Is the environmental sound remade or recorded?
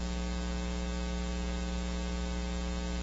recorded